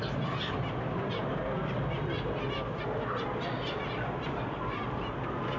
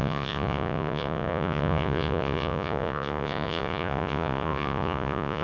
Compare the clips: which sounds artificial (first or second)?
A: second